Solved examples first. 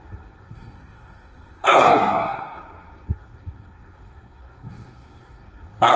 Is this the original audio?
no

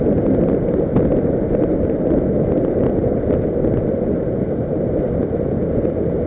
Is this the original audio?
yes